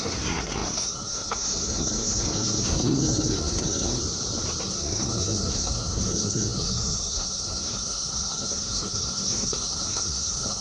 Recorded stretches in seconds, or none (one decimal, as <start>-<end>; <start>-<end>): 4.0-4.6